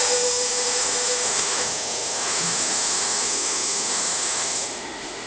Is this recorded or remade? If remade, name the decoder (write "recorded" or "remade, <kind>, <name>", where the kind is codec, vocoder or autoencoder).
remade, autoencoder, DAC-VAE